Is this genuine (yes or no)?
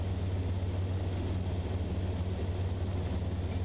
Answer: yes